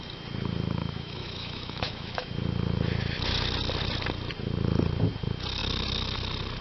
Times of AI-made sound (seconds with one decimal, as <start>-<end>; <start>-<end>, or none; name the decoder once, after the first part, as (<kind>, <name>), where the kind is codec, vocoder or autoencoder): 0.8-2.3 (autoencoder, DAC-VAE)